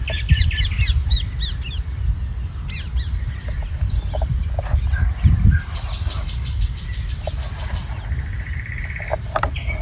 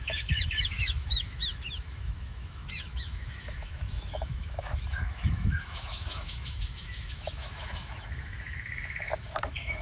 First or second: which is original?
first